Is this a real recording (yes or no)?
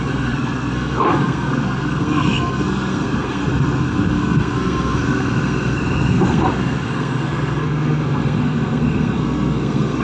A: no